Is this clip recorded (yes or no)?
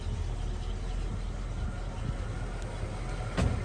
yes